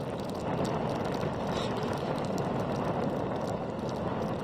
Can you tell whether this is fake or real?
real